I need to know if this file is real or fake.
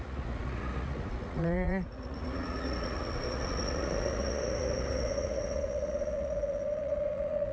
fake